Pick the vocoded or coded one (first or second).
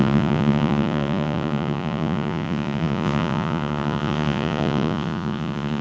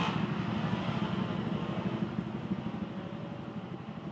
first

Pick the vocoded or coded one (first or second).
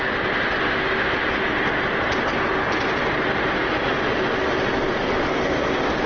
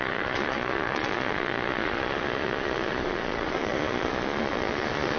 second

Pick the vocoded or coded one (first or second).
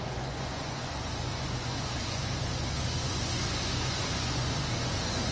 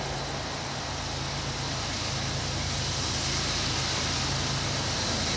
first